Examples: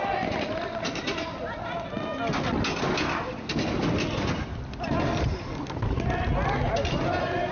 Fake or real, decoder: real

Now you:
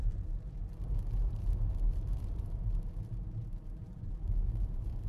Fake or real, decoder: fake, vocoder, BigVGAN v2